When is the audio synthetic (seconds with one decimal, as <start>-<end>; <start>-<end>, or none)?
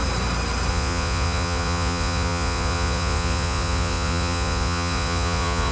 0.7-5.7